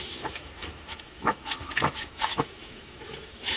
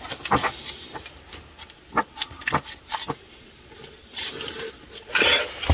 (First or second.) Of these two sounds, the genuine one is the second